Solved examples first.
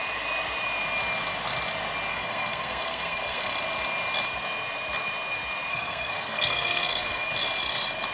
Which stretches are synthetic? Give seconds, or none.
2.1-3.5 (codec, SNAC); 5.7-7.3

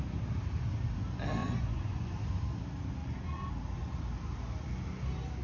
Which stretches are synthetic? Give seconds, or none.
1.4-2.2 (vocoder, Vocos); 3.0-3.5

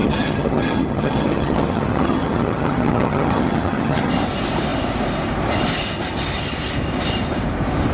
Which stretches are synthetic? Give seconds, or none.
0.0-4.1 (vocoder, HiFi-GAN)

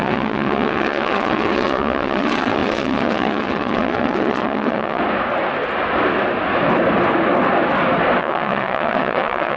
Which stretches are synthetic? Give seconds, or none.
0.0-5.0 (vocoder, WaveNeXt); 8.2-9.6

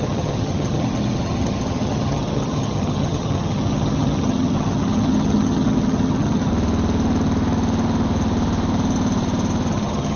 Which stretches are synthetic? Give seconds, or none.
0.0-6.5 (vocoder, HiFi-GAN); 9.7-10.2

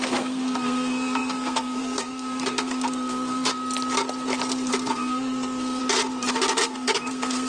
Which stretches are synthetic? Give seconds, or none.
0.0-3.5 (codec, SNAC); 4.7-5.8; 6.3-7.5

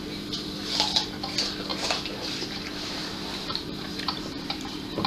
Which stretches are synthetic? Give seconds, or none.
1.7-5.1 (vocoder, BigVGAN v2)

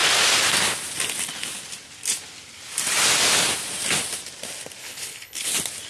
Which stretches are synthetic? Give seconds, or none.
4.8-5.5 (codec, HILCodec)